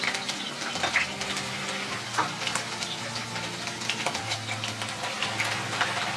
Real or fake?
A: real